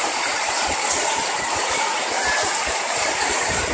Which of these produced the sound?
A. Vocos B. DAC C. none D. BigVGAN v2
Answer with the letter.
D